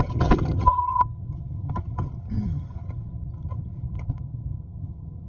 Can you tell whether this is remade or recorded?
remade